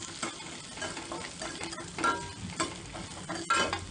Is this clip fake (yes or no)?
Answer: no